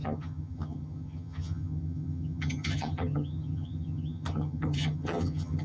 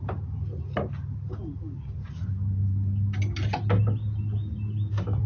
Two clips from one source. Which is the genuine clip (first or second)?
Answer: second